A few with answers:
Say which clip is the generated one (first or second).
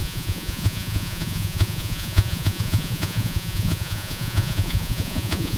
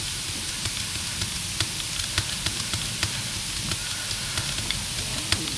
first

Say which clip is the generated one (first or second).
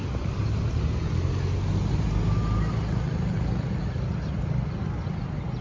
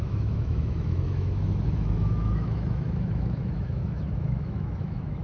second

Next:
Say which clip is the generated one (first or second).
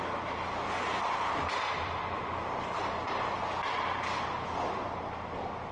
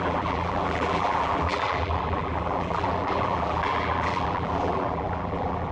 second